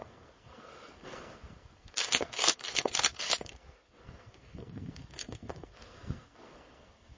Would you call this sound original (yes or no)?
no